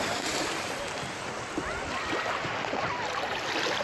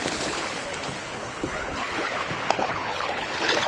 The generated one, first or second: second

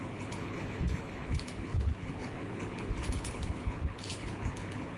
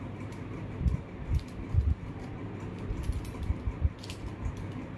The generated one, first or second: first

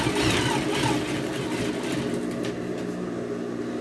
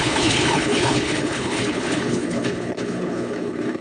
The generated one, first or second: second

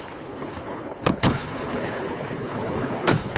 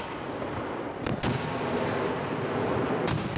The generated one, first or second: first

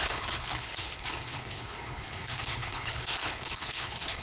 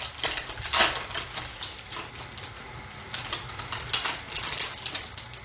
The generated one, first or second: first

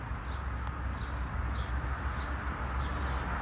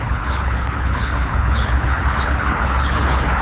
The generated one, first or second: second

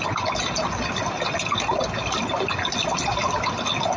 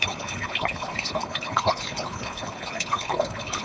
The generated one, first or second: second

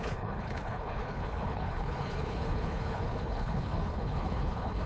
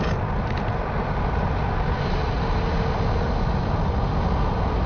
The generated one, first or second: first